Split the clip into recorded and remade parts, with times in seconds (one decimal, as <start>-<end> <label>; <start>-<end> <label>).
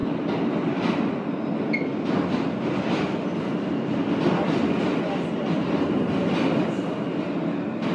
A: 0.0-7.9 recorded